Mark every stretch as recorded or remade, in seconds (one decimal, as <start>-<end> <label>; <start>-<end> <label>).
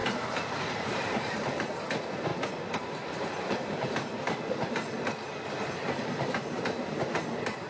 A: 0.0-0.6 recorded; 0.6-2.3 remade; 2.3-2.9 recorded; 2.9-7.7 remade